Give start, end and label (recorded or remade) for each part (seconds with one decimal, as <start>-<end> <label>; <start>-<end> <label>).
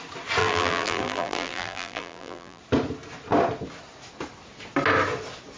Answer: 0.0-0.4 recorded; 0.4-2.6 remade; 2.6-5.6 recorded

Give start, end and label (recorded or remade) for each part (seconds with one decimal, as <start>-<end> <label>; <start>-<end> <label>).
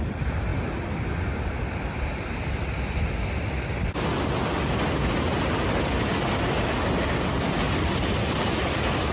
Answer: 0.0-9.1 recorded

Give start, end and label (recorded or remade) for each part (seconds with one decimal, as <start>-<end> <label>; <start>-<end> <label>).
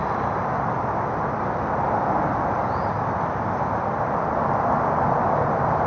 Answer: 0.0-1.7 recorded; 1.7-5.9 remade